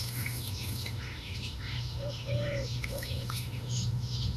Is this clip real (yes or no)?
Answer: no